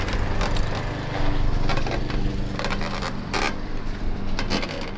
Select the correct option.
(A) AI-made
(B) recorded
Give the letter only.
B